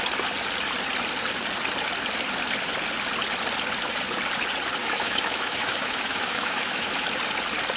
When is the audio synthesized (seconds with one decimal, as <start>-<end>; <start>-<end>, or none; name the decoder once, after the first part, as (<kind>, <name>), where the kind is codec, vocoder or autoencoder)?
4.8-6.9 (autoencoder, DAC-VAE)